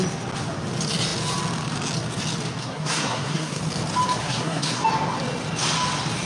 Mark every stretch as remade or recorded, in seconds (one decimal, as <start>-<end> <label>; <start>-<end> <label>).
0.0-2.6 recorded; 2.6-3.6 remade; 3.6-4.2 recorded; 4.2-4.8 remade; 4.8-6.3 recorded